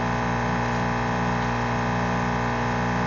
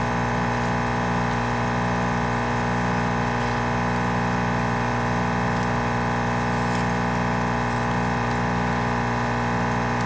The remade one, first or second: second